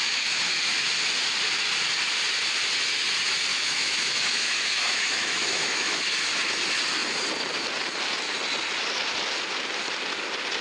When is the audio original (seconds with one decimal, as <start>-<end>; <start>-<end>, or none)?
0.6-3.5; 6.0-10.6

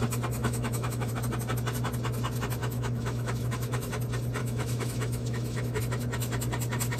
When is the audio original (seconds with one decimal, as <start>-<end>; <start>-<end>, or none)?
0.0-0.4; 1.1-2.6; 3.9-4.4; 5.8-7.0

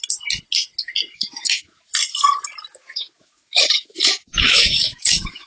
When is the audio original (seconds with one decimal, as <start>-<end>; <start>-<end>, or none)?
0.0-1.1; 1.9-2.7

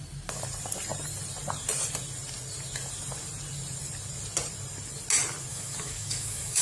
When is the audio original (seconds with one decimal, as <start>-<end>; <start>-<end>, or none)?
0.0-5.5

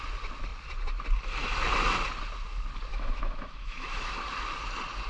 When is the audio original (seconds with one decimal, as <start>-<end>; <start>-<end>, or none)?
0.0-2.9; 4.1-5.1

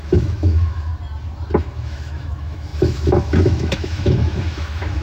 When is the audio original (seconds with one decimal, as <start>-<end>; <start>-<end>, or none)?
0.9-1.6

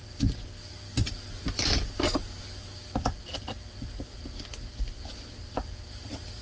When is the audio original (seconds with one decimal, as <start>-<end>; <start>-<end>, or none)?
0.0-6.4